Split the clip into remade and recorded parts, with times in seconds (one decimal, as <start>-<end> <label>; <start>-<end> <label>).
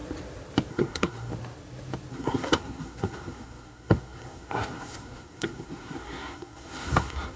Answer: 0.0-0.7 recorded; 0.7-1.3 remade; 1.3-2.1 recorded; 2.1-7.4 remade